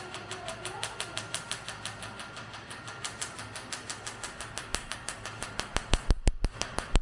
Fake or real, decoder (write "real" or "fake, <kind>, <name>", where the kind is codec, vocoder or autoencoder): real